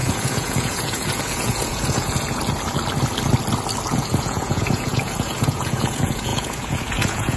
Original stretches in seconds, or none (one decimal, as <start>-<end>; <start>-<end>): 2.4-3.9